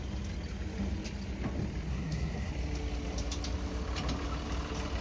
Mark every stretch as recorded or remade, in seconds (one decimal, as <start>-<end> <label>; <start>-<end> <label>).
0.0-1.9 recorded; 1.9-2.5 remade; 2.5-5.0 recorded